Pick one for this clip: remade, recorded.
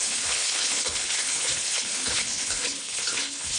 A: remade